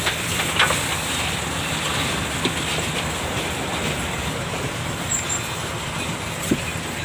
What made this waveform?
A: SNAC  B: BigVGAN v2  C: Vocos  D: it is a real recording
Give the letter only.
D